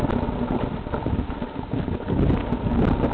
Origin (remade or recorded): recorded